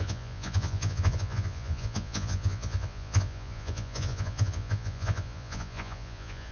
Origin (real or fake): fake